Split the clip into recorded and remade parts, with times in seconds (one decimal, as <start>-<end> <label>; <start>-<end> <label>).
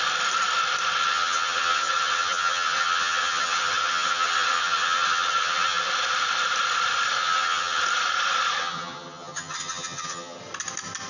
0.0-1.0 recorded; 1.0-5.9 remade; 5.9-7.2 recorded; 7.2-7.8 remade; 7.8-8.6 recorded; 8.6-10.4 remade; 10.4-11.1 recorded